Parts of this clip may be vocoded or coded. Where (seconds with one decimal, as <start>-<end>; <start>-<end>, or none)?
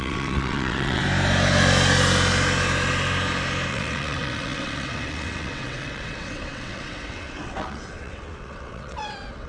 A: 0.0-1.0; 3.7-9.5